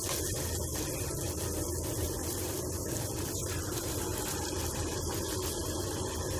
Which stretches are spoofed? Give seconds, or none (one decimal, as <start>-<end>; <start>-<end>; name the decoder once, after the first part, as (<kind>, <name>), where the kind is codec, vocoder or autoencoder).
0.7-4.5 (vocoder, BigVGAN v2)